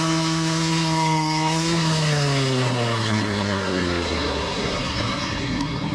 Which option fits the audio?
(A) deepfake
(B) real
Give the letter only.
A